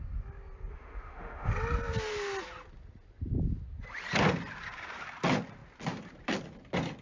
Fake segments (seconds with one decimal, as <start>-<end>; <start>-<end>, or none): 0.7-1.5